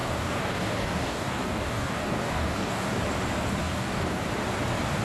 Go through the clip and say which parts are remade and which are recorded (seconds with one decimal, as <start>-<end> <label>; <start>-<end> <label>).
0.0-3.0 remade; 3.0-3.6 recorded; 3.6-4.2 remade; 4.2-5.0 recorded